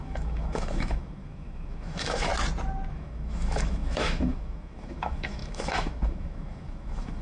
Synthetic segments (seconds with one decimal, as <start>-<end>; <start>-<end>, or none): 0.0-2.3; 2.9-7.2